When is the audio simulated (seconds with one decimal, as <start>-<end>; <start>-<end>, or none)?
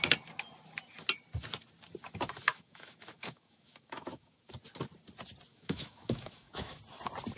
2.5-4.5; 5.5-6.8